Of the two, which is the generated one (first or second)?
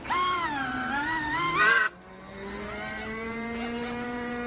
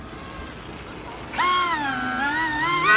first